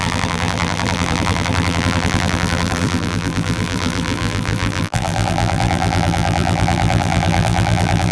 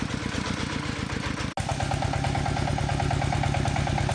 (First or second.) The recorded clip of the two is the second